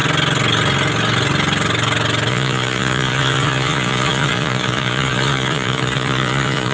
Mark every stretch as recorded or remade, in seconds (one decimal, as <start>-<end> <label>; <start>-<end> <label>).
0.0-2.3 recorded; 2.3-6.7 remade